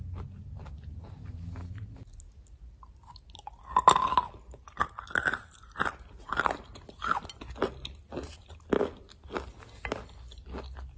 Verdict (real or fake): real